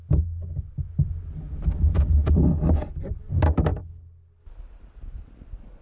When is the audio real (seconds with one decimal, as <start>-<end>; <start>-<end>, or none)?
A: 0.0-5.8